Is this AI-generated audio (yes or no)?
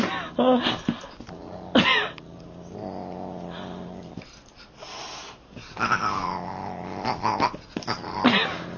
no